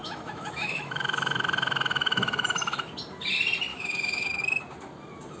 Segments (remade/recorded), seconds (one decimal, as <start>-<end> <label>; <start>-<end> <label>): 0.0-2.9 remade; 2.9-3.7 recorded; 3.7-4.4 remade; 4.4-5.4 recorded